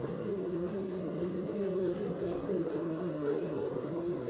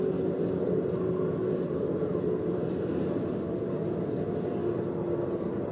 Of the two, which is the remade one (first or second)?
first